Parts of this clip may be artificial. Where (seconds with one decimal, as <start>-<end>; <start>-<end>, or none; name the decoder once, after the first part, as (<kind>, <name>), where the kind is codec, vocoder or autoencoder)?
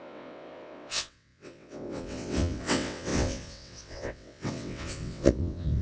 0.0-5.8 (vocoder, WaveNeXt)